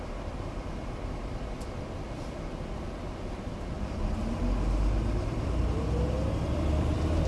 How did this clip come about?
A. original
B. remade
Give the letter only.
B